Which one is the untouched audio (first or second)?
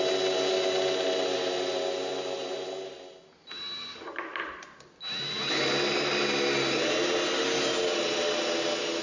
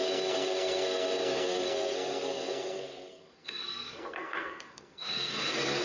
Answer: first